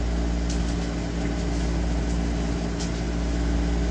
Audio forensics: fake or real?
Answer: real